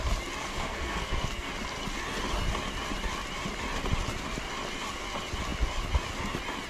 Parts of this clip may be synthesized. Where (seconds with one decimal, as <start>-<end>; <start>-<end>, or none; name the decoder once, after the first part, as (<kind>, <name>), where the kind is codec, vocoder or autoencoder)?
0.4-1.5 (codec, SNAC)